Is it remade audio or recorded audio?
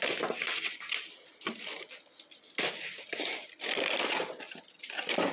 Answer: recorded